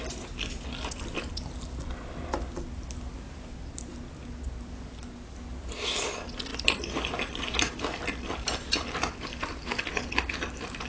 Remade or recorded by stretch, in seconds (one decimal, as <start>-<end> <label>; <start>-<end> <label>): 0.0-10.9 recorded